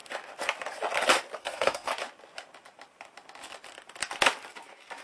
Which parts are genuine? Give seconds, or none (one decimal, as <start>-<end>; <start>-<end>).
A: 0.0-1.4; 1.9-5.0